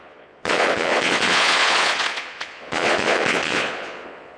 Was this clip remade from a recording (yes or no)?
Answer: yes